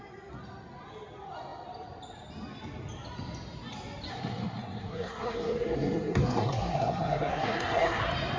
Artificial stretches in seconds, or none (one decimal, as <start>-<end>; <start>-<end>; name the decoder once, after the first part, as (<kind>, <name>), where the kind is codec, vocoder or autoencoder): 4.1-8.0 (codec, SNAC)